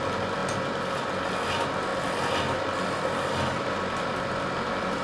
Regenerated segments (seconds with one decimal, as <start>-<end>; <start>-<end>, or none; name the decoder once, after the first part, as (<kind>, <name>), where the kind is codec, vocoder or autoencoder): none